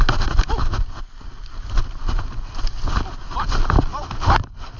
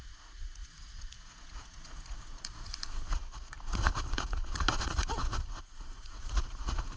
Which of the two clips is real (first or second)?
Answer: first